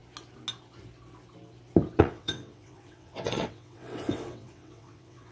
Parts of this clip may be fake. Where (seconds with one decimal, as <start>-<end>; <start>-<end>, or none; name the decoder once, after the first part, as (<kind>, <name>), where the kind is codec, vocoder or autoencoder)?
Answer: 2.0-5.3 (vocoder, WaveNeXt)